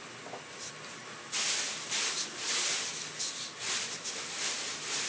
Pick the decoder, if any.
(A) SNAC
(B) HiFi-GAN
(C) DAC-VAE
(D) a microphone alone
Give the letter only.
D